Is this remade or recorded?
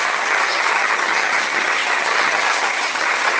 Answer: remade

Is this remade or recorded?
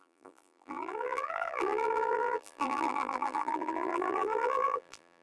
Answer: remade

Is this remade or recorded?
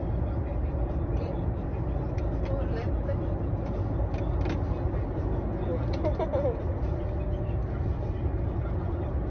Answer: recorded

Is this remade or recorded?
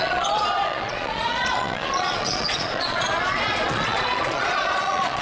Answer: remade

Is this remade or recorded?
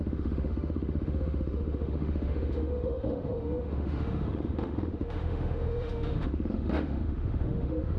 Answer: remade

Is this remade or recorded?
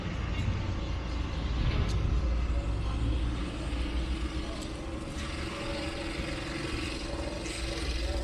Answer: recorded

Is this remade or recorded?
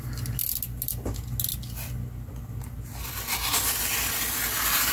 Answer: recorded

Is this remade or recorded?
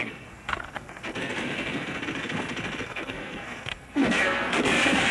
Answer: remade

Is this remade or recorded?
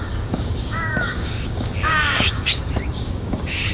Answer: remade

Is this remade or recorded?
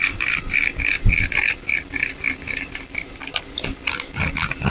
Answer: recorded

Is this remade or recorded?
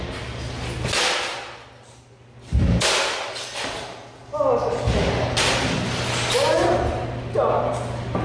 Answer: recorded